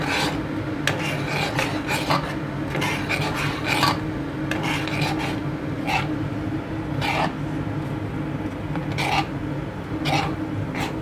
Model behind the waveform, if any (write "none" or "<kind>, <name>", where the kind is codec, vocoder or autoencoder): none